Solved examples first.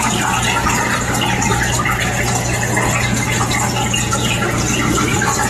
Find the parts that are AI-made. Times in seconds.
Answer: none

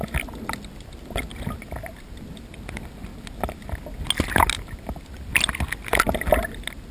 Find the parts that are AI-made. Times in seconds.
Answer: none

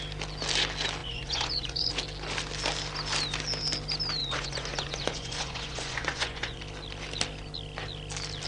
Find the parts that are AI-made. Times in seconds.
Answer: 1.0-1.9 (vocoder, Vocos); 4.2-6.6

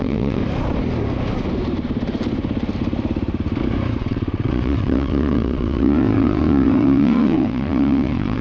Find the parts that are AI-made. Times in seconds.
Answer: 0.0-0.4 (vocoder, WaveNeXt); 4.0-8.4